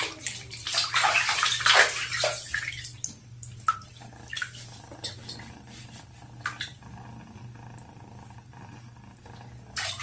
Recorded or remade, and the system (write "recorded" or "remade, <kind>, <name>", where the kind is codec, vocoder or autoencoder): remade, vocoder, BigVGAN v2